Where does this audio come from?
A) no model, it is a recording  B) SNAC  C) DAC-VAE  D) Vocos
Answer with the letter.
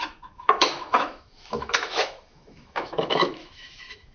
C